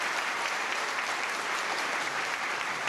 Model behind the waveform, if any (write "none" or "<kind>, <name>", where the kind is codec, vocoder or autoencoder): vocoder, BigVGAN v2